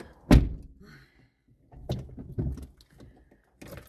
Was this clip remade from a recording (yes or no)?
no